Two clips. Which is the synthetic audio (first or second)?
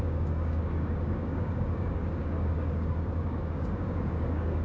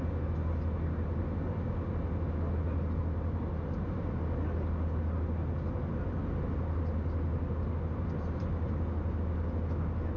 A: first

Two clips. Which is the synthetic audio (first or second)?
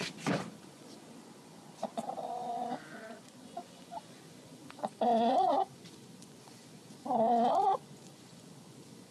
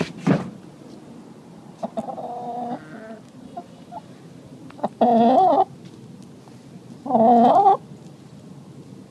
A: first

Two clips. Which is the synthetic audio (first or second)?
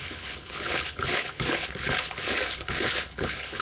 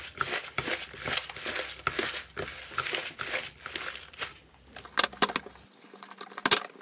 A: first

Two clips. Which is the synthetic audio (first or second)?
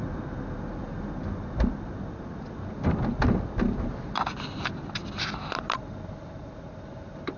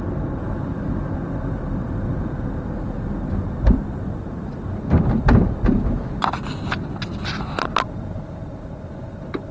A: second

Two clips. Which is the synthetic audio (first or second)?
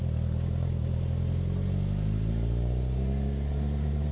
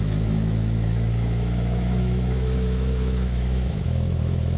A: second